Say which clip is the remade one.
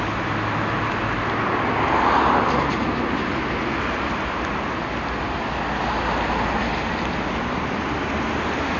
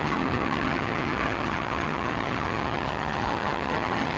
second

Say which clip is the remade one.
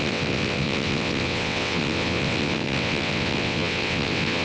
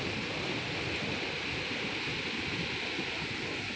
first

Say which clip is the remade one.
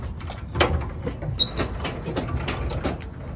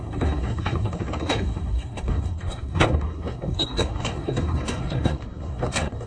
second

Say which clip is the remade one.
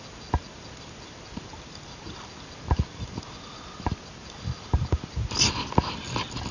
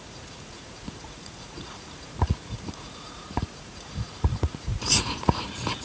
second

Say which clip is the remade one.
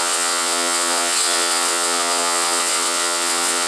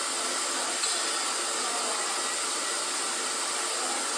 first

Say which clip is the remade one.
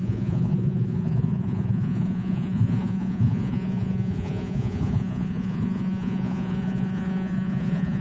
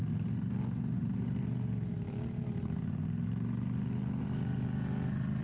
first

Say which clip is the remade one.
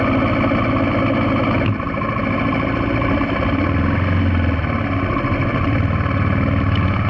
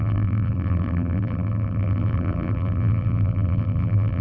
second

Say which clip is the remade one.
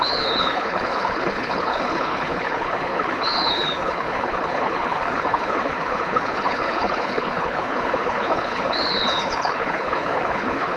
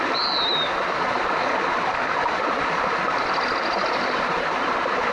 first